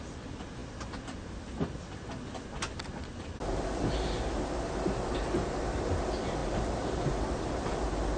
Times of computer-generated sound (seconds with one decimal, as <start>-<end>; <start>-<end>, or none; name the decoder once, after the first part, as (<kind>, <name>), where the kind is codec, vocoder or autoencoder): none